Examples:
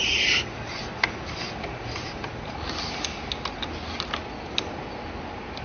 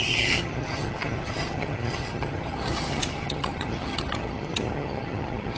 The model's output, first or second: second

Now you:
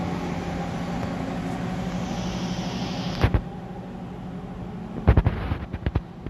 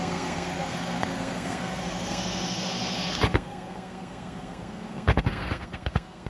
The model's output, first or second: second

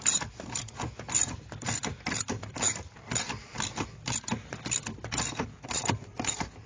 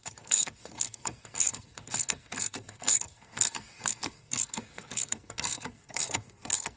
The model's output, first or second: second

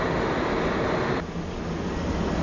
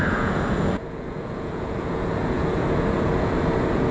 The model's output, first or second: second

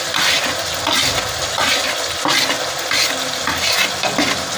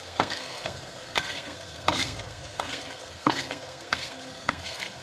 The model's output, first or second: second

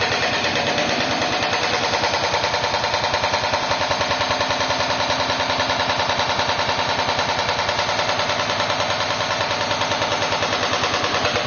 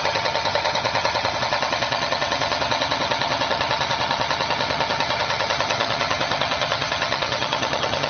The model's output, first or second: second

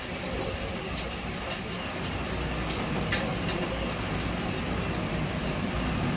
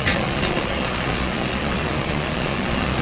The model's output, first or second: second